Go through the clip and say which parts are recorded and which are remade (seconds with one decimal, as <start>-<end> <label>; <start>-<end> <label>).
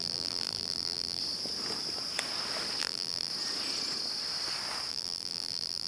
0.0-1.2 remade; 1.2-2.8 recorded; 2.8-3.3 remade; 3.3-4.9 recorded; 4.9-5.9 remade